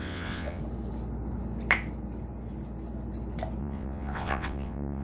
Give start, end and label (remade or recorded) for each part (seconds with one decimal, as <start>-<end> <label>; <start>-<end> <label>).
0.0-0.6 remade; 0.6-3.6 recorded; 3.6-5.0 remade